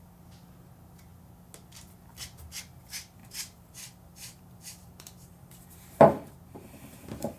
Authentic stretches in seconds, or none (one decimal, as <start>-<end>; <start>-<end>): 0.0-3.2